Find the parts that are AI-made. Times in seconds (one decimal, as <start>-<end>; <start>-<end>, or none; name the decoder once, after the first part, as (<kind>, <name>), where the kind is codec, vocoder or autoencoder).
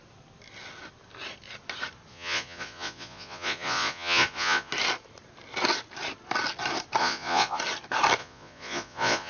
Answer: 2.1-4.7 (vocoder, Vocos); 7.0-7.6; 8.2-9.3